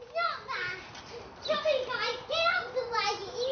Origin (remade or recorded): recorded